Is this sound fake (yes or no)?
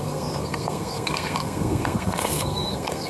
yes